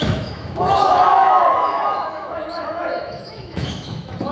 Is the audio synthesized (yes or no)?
yes